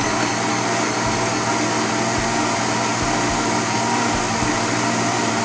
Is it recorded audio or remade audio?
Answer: recorded